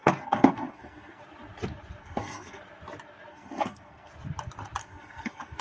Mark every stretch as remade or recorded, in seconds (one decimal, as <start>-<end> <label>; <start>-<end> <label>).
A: 0.0-1.2 remade; 1.2-2.0 recorded; 2.0-2.6 remade; 2.6-3.3 recorded; 3.3-4.1 remade; 4.1-4.8 recorded; 4.8-5.6 remade